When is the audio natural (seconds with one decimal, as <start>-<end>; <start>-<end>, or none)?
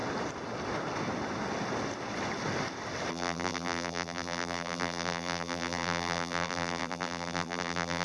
0.0-3.1